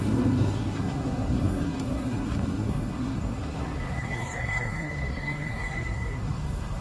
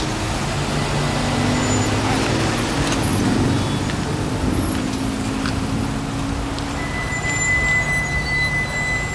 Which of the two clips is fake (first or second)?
first